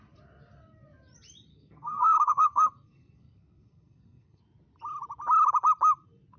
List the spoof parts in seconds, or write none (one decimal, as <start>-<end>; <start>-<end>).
1.5-4.4